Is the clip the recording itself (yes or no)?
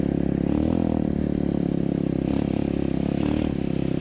yes